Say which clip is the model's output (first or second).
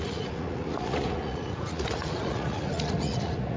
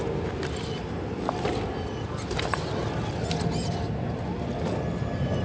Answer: first